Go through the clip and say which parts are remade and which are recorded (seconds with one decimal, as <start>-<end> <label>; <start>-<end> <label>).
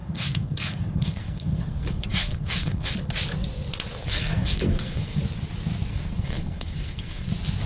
0.0-2.9 remade; 2.9-4.0 recorded; 4.0-5.2 remade; 5.2-5.9 recorded; 5.9-7.3 remade; 7.3-7.7 recorded